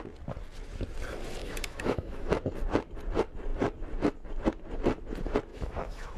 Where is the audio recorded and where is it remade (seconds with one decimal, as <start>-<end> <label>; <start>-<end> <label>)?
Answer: 0.0-1.4 recorded; 1.4-2.3 remade; 2.3-5.5 recorded; 5.5-6.2 remade